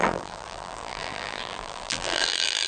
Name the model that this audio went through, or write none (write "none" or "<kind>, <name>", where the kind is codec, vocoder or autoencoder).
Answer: vocoder, BigVGAN v2